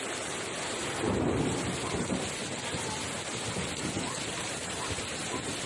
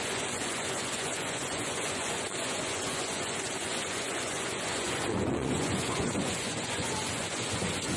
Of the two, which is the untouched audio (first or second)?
first